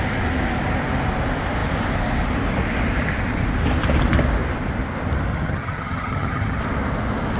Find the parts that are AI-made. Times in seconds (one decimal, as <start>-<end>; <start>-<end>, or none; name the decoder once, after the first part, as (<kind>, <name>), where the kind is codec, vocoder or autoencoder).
5.3-6.6 (vocoder, HiFi-GAN)